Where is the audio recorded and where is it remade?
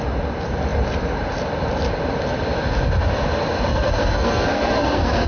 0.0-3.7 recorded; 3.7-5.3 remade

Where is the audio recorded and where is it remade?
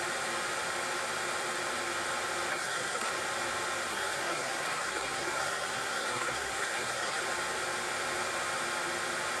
0.0-2.5 recorded; 2.5-3.1 remade; 3.1-3.9 recorded; 3.9-7.2 remade; 7.2-9.4 recorded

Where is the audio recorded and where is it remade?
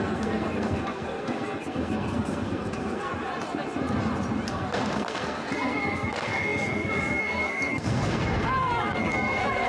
0.0-3.1 remade; 3.1-4.5 recorded; 4.5-9.7 remade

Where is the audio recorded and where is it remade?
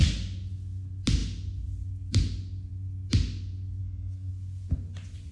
0.0-3.8 recorded; 3.8-4.3 remade; 4.3-5.3 recorded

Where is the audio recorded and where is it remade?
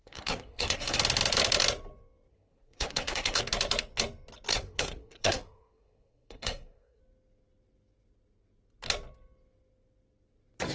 0.0-1.0 remade; 1.0-2.3 recorded; 2.3-3.4 remade; 3.4-4.5 recorded; 4.5-7.0 remade; 7.0-10.7 recorded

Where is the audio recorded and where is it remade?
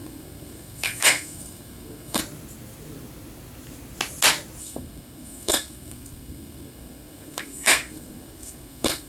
0.0-2.2 remade; 2.2-4.6 recorded; 4.6-9.1 remade